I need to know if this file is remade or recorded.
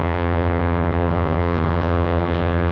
remade